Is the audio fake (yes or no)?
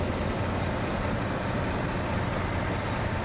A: no